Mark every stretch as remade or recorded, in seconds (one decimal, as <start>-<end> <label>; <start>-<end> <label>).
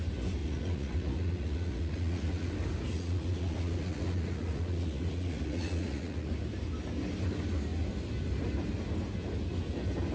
0.0-0.4 recorded; 0.4-2.5 remade; 2.5-2.9 recorded; 2.9-6.3 remade; 6.3-10.1 recorded